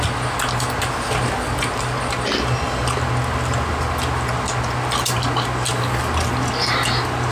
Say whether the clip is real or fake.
real